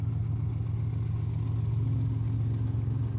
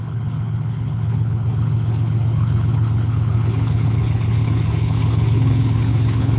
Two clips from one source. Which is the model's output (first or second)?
second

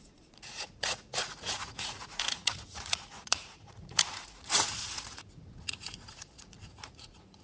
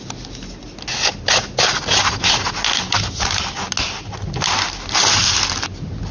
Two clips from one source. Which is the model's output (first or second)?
first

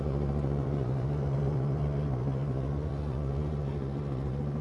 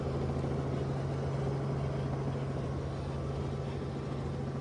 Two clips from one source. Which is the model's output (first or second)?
first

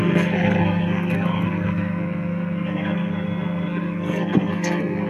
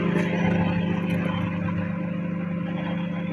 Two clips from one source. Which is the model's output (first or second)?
first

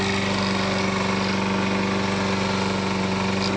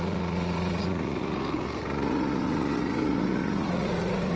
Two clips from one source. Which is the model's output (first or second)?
second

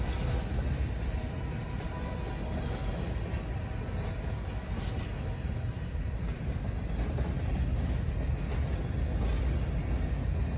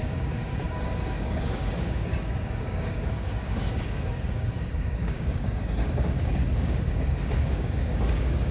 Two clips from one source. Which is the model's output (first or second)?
second